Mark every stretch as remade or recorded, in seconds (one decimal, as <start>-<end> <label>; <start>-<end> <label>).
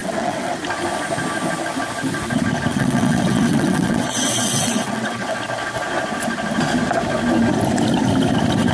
0.0-0.6 remade; 0.6-2.7 recorded; 2.7-5.4 remade; 5.4-8.7 recorded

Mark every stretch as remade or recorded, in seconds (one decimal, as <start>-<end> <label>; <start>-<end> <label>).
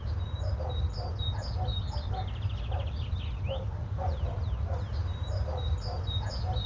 0.0-3.8 recorded; 3.8-4.4 remade; 4.4-6.7 recorded